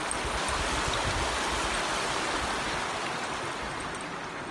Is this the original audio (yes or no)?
yes